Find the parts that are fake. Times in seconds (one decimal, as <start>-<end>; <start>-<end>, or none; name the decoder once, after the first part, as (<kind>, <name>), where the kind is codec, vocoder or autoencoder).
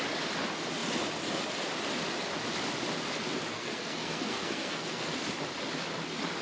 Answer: 3.5-5.1 (codec, SNAC)